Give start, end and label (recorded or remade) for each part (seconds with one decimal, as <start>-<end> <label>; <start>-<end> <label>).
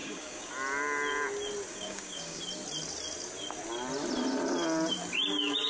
0.0-0.5 remade; 0.5-1.7 recorded; 1.7-2.4 remade; 2.4-5.7 recorded